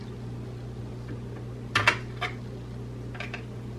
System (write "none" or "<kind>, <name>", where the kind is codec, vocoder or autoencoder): none